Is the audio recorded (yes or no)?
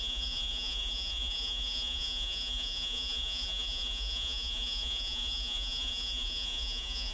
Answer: no